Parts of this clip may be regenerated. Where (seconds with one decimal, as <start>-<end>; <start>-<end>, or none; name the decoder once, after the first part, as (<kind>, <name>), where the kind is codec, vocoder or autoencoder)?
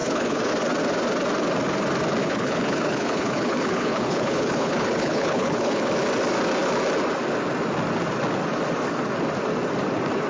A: 0.0-0.5 (codec, HILCodec); 2.2-5.9